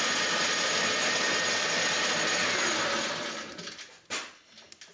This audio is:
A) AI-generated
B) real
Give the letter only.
B